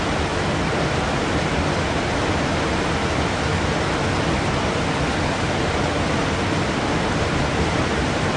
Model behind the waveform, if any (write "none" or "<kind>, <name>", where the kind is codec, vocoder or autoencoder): none